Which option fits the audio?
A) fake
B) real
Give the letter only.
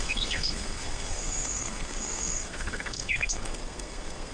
A